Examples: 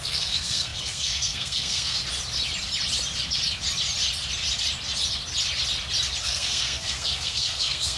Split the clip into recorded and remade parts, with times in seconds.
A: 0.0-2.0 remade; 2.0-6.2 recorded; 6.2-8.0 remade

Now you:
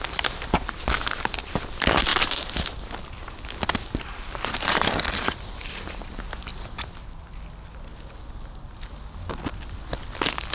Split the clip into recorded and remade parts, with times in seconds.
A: 0.0-10.5 recorded

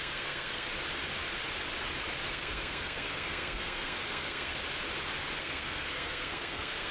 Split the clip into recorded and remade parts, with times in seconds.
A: 0.0-0.7 remade; 0.7-2.3 recorded; 2.3-4.5 remade; 4.5-5.4 recorded; 5.4-6.9 remade

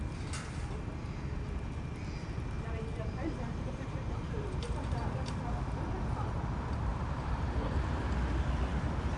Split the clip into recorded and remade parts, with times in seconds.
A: 0.0-2.9 recorded; 2.9-5.4 remade; 5.4-6.9 recorded; 6.9-7.8 remade; 7.8-9.2 recorded

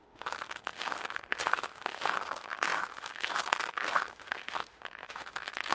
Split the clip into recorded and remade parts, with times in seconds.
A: 0.0-5.7 remade

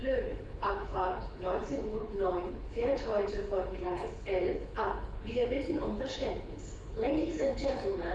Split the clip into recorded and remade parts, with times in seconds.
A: 0.0-8.1 remade

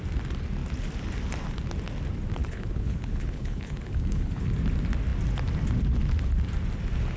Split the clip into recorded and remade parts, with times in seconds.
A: 0.0-2.4 recorded; 2.4-4.5 remade; 4.5-7.2 recorded